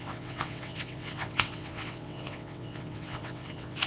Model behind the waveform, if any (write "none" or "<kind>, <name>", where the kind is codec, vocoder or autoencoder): vocoder, WaveNeXt